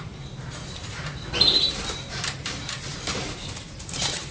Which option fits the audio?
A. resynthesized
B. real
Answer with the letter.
A